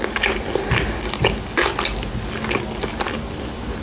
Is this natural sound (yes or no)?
yes